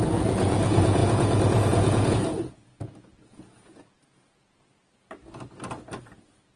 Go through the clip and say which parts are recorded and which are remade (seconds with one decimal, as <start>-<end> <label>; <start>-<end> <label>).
0.0-4.8 remade; 4.8-6.0 recorded; 6.0-6.6 remade